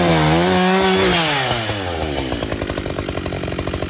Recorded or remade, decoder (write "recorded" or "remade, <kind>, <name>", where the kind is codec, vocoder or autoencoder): recorded